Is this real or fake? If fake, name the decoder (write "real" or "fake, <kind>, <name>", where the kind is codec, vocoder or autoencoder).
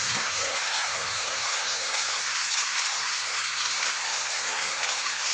fake, codec, SNAC